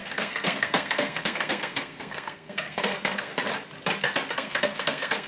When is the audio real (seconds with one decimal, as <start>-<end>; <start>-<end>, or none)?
3.3-4.3